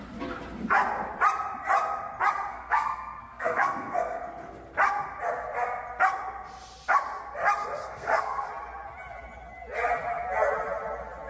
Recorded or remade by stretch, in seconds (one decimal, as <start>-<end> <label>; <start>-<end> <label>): 0.0-2.5 recorded; 2.5-4.2 remade; 4.2-7.8 recorded; 7.8-8.5 remade; 8.5-11.3 recorded